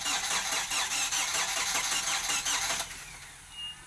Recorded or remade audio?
recorded